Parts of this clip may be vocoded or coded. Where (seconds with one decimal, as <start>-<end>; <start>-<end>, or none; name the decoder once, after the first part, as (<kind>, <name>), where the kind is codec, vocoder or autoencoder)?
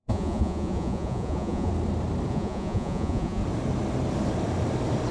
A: 0.0-1.7 (vocoder, Vocos); 2.3-3.4